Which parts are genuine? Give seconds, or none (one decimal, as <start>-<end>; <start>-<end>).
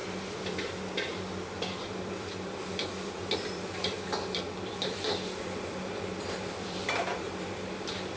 none